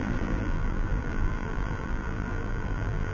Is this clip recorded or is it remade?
remade